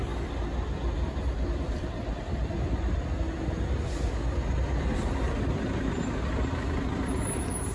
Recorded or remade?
recorded